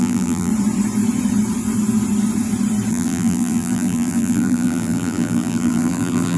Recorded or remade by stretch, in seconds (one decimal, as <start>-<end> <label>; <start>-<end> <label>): 0.0-0.5 remade; 0.5-2.9 recorded; 2.9-6.4 remade